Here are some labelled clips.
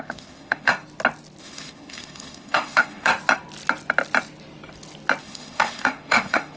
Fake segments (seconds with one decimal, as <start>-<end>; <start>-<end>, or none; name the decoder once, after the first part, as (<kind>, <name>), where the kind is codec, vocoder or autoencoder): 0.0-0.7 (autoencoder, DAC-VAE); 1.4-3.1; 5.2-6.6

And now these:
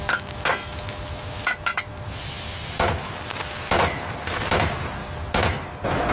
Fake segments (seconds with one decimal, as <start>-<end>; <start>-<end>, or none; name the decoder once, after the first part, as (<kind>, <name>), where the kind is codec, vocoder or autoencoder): none

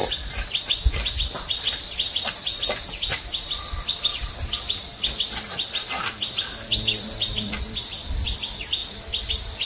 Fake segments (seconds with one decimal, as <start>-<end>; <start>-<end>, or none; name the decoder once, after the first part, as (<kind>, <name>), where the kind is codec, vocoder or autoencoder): none

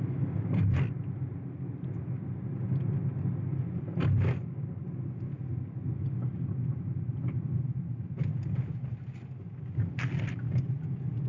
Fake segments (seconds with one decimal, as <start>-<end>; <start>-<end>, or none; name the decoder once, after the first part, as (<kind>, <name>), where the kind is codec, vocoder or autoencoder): none

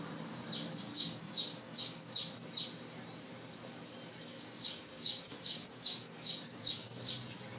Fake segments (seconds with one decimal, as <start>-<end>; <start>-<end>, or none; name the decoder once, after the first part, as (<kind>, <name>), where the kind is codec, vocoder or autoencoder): 0.9-2.1 (codec, DAC); 4.3-7.1